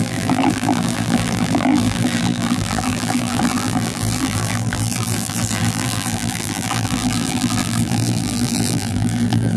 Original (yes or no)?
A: no